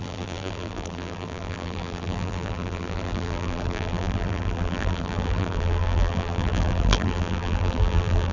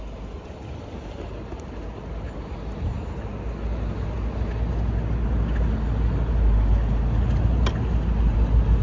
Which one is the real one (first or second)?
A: second